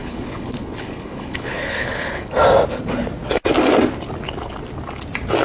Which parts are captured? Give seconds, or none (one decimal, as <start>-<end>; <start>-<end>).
2.3-5.4